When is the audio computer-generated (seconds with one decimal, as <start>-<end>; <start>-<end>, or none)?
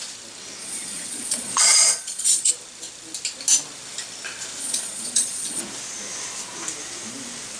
0.6-2.5; 4.6-5.6